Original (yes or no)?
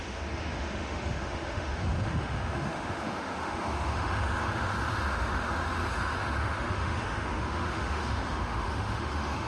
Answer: no